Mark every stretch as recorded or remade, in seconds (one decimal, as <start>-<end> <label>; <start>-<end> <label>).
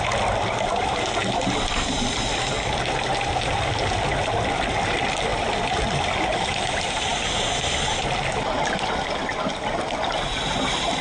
0.0-11.0 recorded